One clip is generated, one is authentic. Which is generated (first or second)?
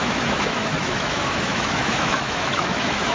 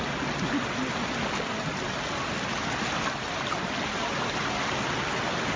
first